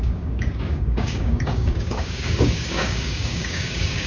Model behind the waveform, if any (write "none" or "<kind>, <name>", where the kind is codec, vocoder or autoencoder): codec, DAC